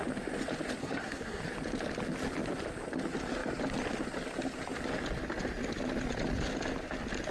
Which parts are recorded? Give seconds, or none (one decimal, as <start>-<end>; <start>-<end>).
0.0-0.8; 1.4-7.3